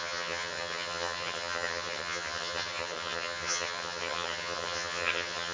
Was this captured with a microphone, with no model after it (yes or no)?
no